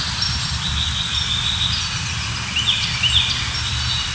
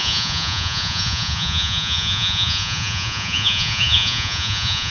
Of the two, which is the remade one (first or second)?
second